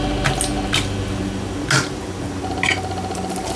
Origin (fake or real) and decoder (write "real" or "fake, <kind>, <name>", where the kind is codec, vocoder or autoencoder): real